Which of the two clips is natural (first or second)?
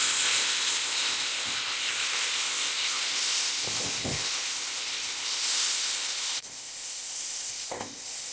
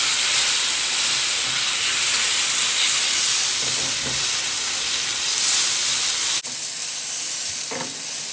second